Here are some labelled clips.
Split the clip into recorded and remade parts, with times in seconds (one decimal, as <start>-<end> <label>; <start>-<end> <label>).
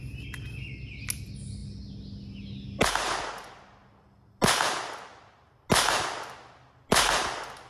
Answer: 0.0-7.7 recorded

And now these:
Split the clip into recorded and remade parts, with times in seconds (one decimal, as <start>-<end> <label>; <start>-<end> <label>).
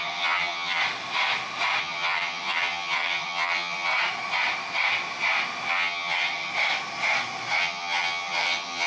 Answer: 0.0-0.8 remade; 0.8-1.8 recorded; 1.8-3.9 remade; 3.9-5.7 recorded; 5.7-6.5 remade; 6.5-7.6 recorded; 7.6-8.9 remade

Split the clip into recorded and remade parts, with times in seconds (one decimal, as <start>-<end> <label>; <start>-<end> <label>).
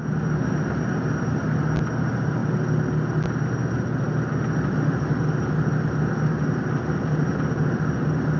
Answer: 0.0-8.4 recorded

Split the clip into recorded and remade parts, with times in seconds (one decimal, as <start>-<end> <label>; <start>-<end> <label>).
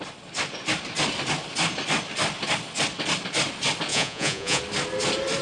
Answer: 0.0-3.9 recorded; 3.9-4.6 remade; 4.6-5.4 recorded